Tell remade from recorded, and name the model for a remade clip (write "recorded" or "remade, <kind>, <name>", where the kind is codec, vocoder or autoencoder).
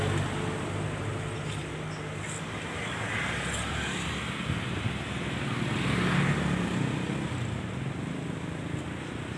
recorded